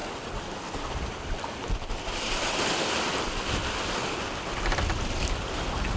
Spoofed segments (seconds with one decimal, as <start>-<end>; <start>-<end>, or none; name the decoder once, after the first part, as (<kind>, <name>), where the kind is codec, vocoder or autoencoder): none